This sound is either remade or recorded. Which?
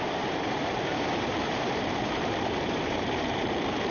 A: remade